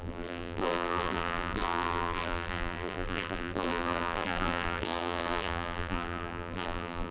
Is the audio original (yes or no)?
no